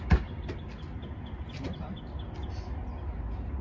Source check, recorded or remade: recorded